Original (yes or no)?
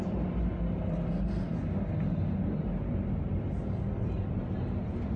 yes